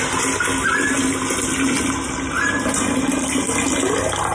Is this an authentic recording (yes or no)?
yes